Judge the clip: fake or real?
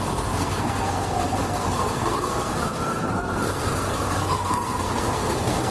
fake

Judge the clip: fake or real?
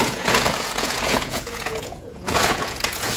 fake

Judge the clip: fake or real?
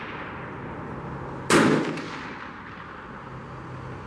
real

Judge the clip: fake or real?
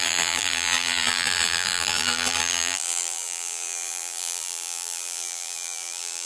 fake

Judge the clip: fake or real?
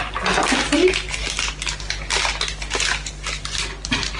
real